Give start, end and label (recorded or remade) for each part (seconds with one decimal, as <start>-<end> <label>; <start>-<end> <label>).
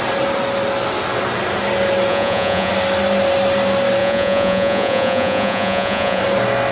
0.0-2.1 recorded; 2.1-2.7 remade; 2.7-4.0 recorded; 4.0-6.2 remade; 6.2-6.7 recorded